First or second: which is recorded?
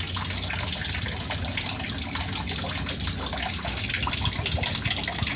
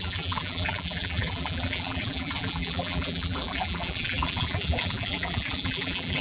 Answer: first